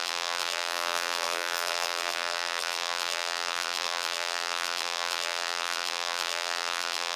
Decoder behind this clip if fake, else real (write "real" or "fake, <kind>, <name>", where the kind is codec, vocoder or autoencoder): fake, vocoder, BigVGAN v2